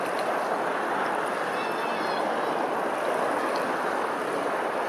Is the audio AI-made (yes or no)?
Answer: no